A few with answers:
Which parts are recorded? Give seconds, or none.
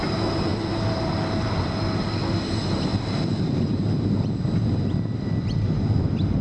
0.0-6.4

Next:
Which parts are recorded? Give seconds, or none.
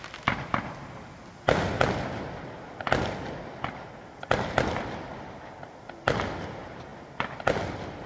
0.0-8.1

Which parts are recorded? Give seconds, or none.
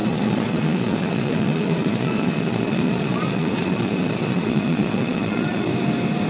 5.7-6.3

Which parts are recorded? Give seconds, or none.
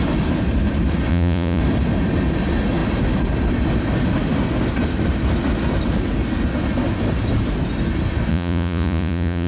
0.0-1.1; 1.6-8.3